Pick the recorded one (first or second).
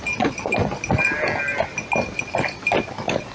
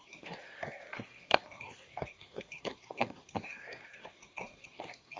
first